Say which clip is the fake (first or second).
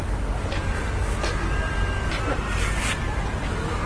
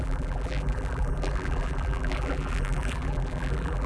second